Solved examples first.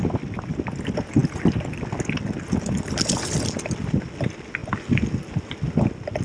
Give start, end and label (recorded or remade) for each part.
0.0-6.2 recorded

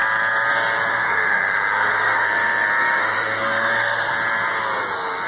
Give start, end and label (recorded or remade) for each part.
0.0-0.9 recorded; 0.9-4.1 remade; 4.1-5.3 recorded

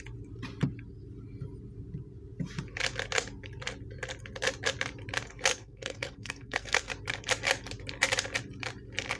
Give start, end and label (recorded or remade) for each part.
0.0-5.5 recorded; 5.5-6.9 remade; 6.9-9.2 recorded

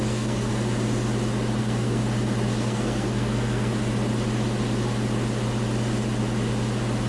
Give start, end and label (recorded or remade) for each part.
0.0-0.5 remade; 0.5-1.6 recorded; 1.6-2.0 remade; 2.0-2.6 recorded; 2.6-3.7 remade; 3.7-7.1 recorded

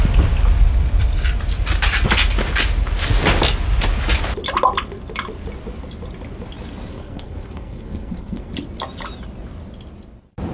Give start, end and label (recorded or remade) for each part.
0.0-6.9 recorded; 6.9-8.5 remade; 8.5-10.5 recorded

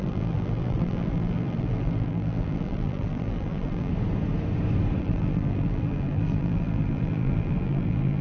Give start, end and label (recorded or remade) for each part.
0.0-3.9 remade; 3.9-5.0 recorded; 5.0-8.2 remade